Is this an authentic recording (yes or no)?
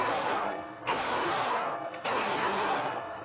no